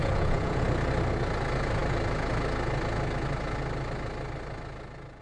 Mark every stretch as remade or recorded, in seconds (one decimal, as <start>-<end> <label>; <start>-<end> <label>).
0.0-0.6 remade; 0.6-5.2 recorded